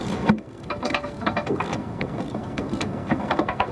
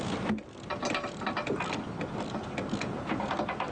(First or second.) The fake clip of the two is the first